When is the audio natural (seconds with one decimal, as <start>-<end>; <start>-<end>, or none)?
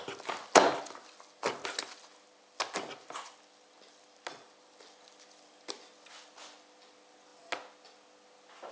0.0-8.7